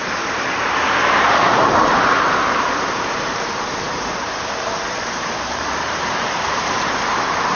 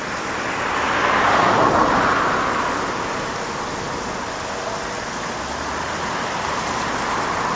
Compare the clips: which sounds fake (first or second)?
first